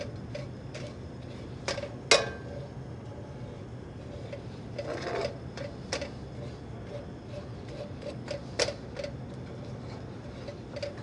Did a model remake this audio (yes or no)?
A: no